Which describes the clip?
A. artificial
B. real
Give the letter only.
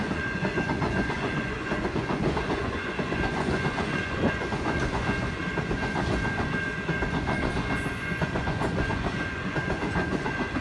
A